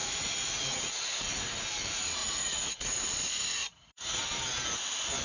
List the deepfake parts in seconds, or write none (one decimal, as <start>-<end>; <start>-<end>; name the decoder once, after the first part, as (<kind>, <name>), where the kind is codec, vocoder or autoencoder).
0.0-1.4 (vocoder, Vocos); 2.2-3.0; 3.6-4.2